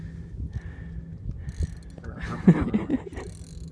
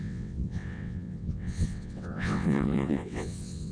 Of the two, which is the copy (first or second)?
second